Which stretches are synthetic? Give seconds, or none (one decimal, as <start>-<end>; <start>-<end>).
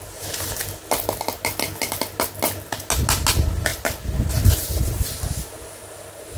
none